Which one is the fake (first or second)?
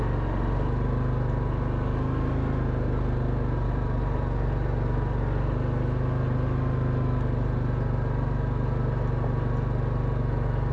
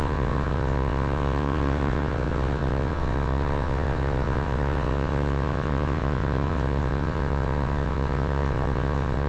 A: second